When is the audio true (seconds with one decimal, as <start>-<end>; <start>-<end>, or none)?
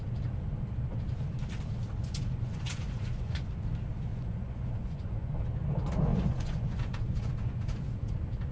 0.0-2.0; 3.5-4.1; 5.4-6.1; 8.1-8.5